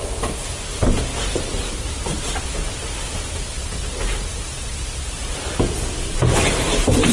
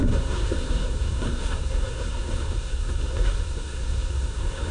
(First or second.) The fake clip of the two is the second